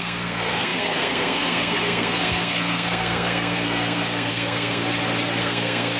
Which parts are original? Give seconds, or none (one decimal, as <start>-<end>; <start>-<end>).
4.8-5.4